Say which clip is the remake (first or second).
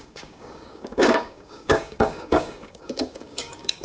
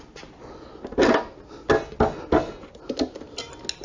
first